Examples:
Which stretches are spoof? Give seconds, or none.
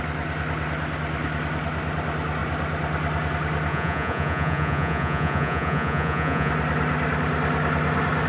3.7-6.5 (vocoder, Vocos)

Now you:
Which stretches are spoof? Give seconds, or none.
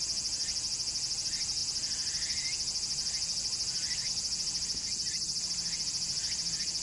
none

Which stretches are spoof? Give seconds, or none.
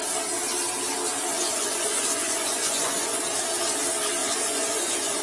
1.3-3.2 (vocoder, Vocos); 4.2-5.2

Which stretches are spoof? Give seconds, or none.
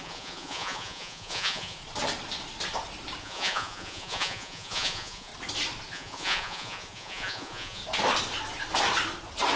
0.0-1.8 (vocoder, Vocos); 3.2-5.3; 5.9-7.8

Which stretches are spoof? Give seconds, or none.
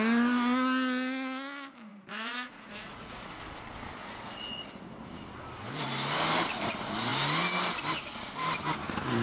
1.9-3.4 (vocoder, Vocos); 4.0-4.7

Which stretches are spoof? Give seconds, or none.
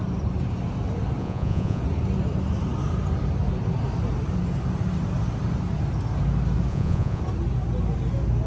1.2-1.8 (vocoder, Vocos); 6.7-7.2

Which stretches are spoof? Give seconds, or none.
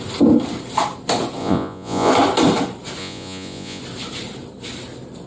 1.4-2.1 (vocoder, Vocos); 3.0-3.8